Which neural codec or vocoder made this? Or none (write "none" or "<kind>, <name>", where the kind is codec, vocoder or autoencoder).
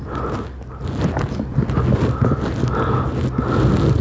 none